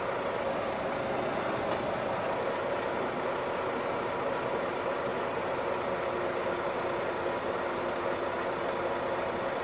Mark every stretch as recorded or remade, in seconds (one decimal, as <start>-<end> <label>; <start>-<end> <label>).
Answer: 0.0-9.6 recorded